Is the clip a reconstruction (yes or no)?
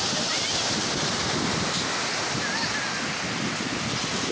no